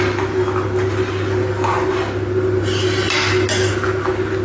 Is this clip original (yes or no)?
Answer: yes